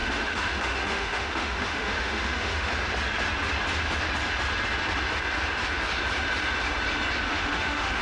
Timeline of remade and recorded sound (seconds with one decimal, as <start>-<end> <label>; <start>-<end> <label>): 0.0-2.7 remade; 2.7-7.3 recorded; 7.3-8.0 remade